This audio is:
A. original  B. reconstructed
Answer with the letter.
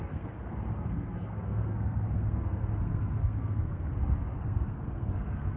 B